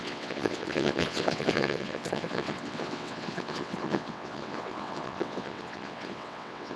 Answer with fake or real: fake